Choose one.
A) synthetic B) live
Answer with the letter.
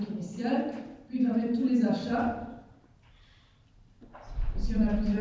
A